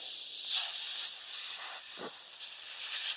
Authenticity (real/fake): real